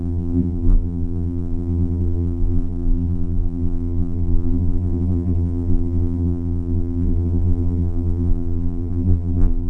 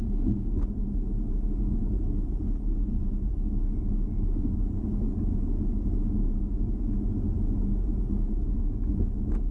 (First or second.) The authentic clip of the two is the second